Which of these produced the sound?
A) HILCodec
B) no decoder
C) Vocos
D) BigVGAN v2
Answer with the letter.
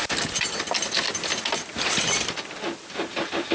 B